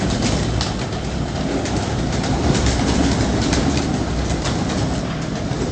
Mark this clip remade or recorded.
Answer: recorded